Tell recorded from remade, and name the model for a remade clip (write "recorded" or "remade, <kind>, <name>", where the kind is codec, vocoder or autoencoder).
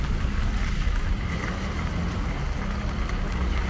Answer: recorded